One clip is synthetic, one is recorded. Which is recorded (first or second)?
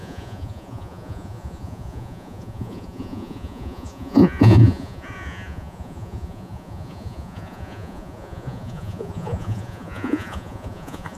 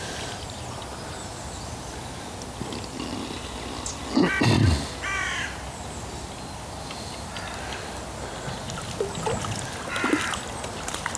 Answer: second